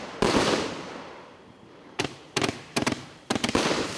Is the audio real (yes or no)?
no